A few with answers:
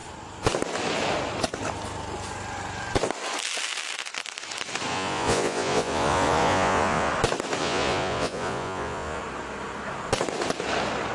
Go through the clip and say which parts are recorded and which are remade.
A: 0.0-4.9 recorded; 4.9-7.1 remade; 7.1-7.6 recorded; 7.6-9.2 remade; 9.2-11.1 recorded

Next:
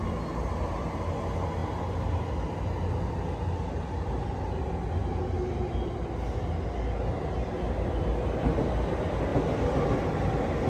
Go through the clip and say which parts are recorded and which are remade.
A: 0.0-10.7 recorded

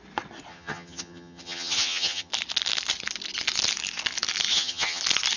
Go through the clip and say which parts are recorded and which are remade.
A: 0.0-0.5 recorded; 0.5-2.3 remade; 2.3-4.5 recorded; 4.5-5.0 remade; 5.0-5.4 recorded

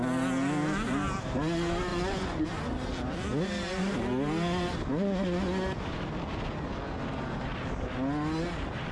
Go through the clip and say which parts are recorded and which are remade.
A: 0.0-1.9 recorded; 1.9-2.4 remade; 2.4-8.9 recorded

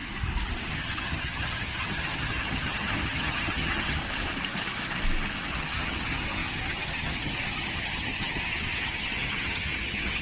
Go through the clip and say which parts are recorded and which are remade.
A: 0.0-0.7 recorded; 0.7-4.0 remade; 4.0-5.5 recorded; 5.5-10.2 remade

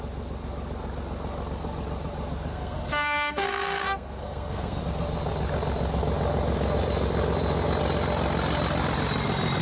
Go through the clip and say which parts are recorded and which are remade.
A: 0.0-2.5 recorded; 2.5-4.8 remade; 4.8-9.6 recorded

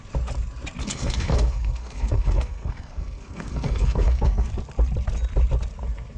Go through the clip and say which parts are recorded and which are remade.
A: 0.0-0.8 recorded; 0.8-4.5 remade; 4.5-6.2 recorded

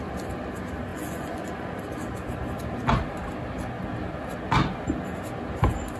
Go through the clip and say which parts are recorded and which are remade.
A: 0.0-0.9 recorded; 0.9-1.8 remade; 1.8-6.0 recorded